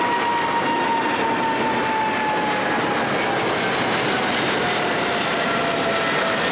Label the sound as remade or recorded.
recorded